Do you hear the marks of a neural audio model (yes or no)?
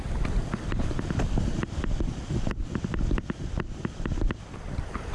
no